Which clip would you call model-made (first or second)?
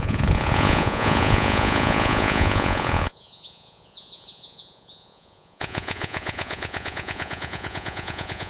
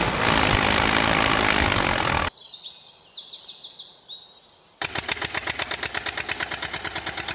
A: first